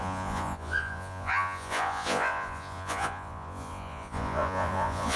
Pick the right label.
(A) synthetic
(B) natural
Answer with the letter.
A